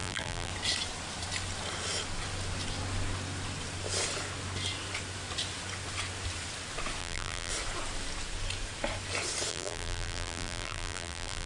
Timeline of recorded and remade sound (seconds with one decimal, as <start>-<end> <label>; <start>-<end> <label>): 0.0-0.5 remade; 0.5-7.0 recorded; 7.0-7.5 remade; 7.5-9.5 recorded; 9.5-11.5 remade